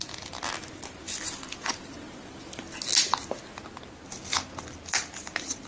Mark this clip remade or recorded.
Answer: recorded